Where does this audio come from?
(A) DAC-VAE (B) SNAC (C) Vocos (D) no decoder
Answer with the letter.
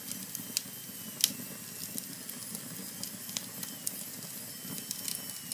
D